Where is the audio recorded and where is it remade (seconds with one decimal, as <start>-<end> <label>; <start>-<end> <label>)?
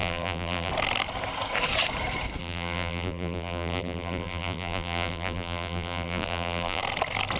0.0-0.7 remade; 0.7-2.4 recorded; 2.4-6.8 remade; 6.8-7.4 recorded